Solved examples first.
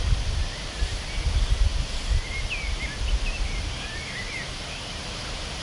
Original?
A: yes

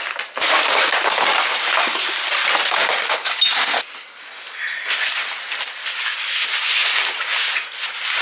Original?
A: yes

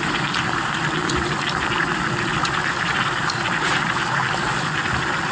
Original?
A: yes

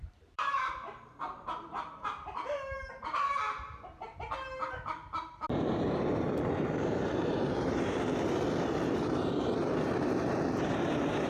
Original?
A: no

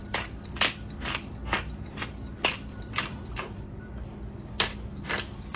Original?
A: no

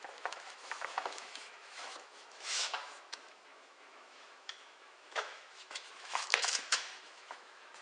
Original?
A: no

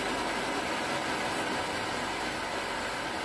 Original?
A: yes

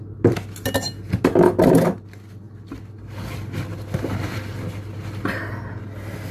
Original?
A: yes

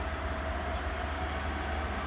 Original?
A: yes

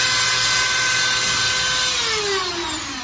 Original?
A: yes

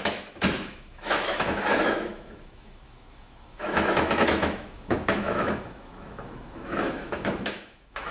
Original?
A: no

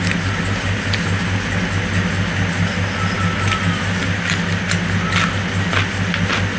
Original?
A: yes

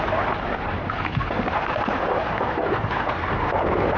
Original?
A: yes